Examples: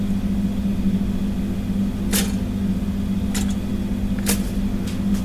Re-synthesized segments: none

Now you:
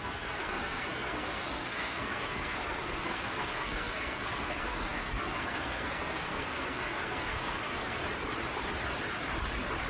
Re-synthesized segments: 0.0-8.0 (codec, SNAC)